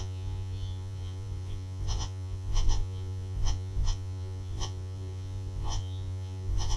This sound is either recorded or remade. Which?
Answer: remade